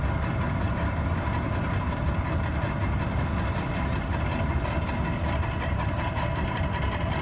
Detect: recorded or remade recorded